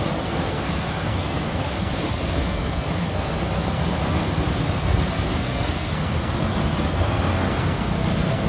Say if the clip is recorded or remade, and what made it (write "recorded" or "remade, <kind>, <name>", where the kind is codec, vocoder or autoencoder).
remade, codec, SNAC